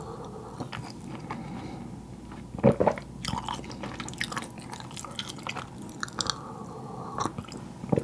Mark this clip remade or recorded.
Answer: recorded